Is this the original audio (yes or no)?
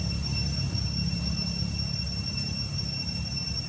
yes